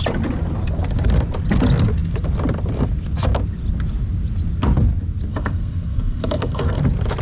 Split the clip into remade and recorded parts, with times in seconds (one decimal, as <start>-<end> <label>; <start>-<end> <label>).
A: 0.0-5.3 recorded; 5.3-6.8 remade; 6.8-7.2 recorded